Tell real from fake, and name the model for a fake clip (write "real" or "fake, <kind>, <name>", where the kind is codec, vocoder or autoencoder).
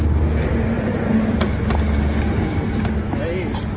real